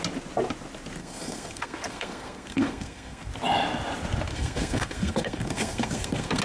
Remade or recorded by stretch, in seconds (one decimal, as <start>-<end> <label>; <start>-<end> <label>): 0.0-1.0 recorded; 1.0-3.3 remade; 3.3-4.3 recorded; 4.3-6.4 remade